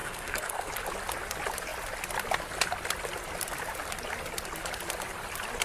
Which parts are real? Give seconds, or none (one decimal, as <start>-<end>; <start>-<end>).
0.7-5.6